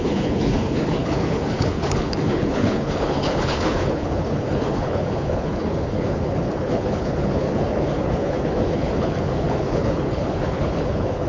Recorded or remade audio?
remade